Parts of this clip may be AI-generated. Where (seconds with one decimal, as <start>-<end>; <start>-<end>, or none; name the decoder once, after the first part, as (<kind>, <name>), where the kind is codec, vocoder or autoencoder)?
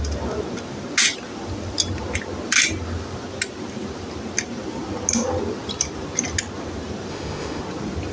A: 7.1-7.6 (autoencoder, DAC-VAE)